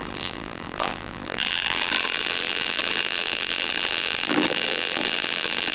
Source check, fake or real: fake